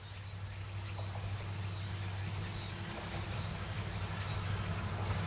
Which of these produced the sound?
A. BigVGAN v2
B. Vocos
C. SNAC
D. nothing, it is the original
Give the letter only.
D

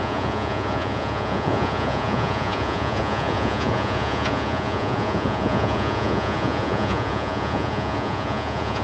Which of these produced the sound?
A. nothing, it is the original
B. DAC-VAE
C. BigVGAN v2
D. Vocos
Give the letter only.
D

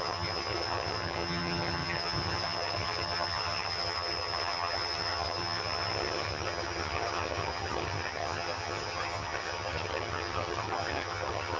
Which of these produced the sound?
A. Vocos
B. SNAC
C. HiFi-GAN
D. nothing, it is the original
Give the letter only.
C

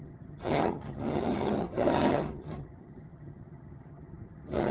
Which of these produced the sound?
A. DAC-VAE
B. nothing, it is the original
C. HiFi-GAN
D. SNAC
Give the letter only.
C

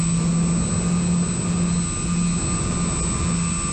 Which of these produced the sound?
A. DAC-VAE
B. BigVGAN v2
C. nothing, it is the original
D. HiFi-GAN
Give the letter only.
C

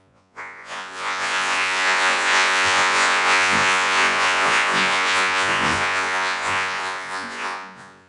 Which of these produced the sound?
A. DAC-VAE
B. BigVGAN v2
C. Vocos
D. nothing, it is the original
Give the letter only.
C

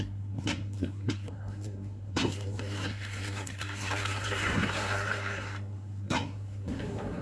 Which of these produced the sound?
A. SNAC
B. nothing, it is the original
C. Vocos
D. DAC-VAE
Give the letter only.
A